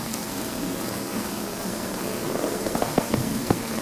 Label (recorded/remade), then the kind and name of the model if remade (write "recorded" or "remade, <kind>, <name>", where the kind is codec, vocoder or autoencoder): remade, codec, SNAC